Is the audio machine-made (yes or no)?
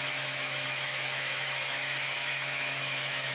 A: yes